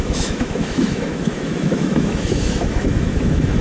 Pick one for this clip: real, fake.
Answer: fake